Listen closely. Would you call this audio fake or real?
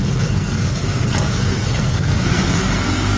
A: fake